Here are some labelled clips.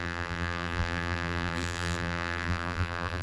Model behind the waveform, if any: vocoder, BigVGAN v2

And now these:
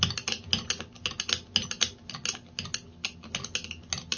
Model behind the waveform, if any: none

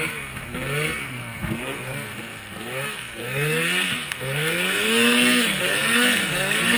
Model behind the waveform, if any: codec, SNAC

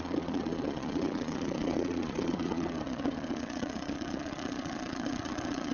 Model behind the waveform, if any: vocoder, Vocos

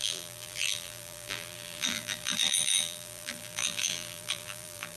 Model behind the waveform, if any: vocoder, BigVGAN v2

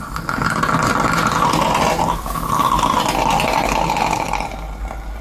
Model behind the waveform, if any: none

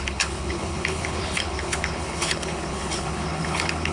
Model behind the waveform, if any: codec, HILCodec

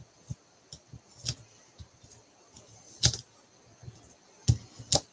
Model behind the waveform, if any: none